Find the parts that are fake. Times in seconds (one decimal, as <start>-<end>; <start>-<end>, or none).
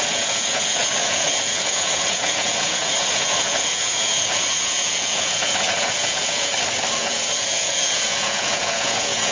0.0-6.5; 7.0-9.3